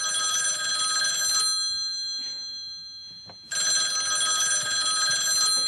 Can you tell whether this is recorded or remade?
recorded